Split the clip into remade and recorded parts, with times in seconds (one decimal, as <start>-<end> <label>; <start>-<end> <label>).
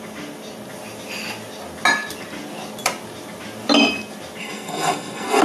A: 0.0-4.4 recorded; 4.4-5.4 remade